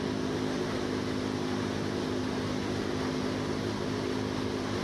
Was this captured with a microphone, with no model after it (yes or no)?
yes